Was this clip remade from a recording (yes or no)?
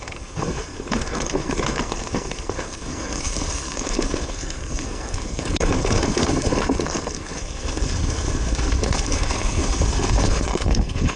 yes